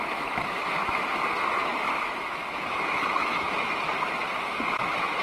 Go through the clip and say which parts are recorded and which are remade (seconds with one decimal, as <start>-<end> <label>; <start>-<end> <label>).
0.0-5.2 remade